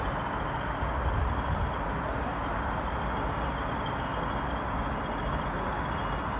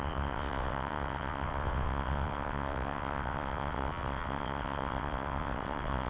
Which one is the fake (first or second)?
second